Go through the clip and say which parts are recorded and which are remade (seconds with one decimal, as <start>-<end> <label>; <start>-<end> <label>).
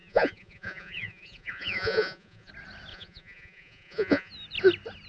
0.0-2.5 remade; 2.5-2.9 recorded; 2.9-4.3 remade; 4.3-5.1 recorded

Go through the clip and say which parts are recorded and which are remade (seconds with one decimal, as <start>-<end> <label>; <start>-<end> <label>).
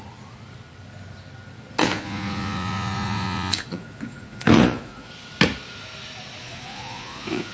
0.0-1.8 recorded; 1.8-5.1 remade; 5.1-6.4 recorded; 6.4-7.5 remade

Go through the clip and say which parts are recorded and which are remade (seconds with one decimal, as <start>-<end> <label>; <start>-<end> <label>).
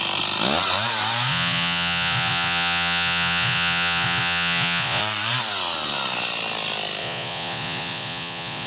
0.0-1.3 recorded; 1.3-5.0 remade; 5.0-7.0 recorded; 7.0-8.7 remade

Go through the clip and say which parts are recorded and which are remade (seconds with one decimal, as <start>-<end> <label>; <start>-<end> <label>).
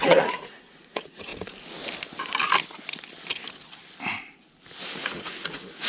0.0-1.3 remade; 1.3-4.8 recorded; 4.8-5.9 remade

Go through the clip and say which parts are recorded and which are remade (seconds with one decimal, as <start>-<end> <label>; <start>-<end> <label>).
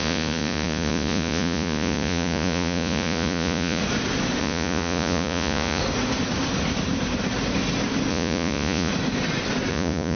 0.0-3.8 remade; 3.8-4.4 recorded; 4.4-5.8 remade; 5.8-8.1 recorded; 8.1-8.9 remade; 8.9-9.7 recorded; 9.7-10.2 remade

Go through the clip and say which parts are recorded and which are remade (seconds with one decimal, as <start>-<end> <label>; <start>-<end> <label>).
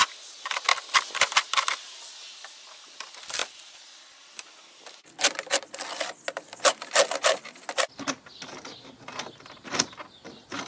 0.0-10.7 recorded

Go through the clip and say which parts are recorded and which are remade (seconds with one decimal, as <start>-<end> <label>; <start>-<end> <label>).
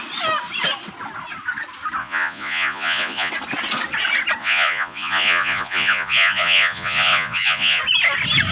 0.0-2.0 recorded; 2.0-3.3 remade; 3.3-4.4 recorded; 4.4-7.8 remade; 7.8-8.5 recorded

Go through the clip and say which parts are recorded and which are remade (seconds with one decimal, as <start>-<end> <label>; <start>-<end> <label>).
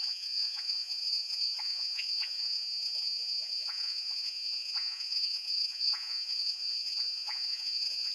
0.0-8.1 remade